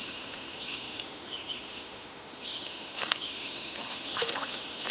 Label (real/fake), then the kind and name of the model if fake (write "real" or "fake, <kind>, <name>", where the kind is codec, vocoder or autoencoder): fake, autoencoder, DAC-VAE